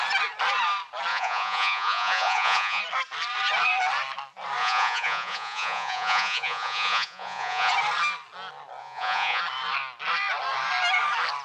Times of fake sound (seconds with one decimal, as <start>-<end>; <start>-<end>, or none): 1.1-2.8; 4.6-7.7; 8.8-9.4